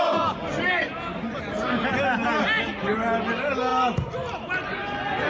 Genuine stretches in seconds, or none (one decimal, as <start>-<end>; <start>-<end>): 0.0-5.3